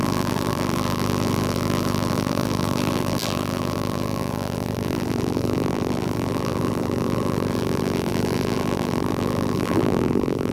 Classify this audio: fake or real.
fake